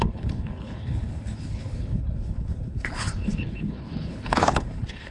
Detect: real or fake fake